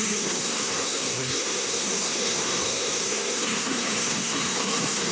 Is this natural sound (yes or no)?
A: no